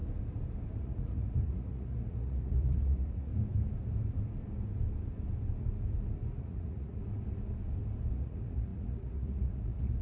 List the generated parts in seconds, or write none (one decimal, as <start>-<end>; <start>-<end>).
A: 0.8-3.3; 6.4-7.0; 8.1-10.0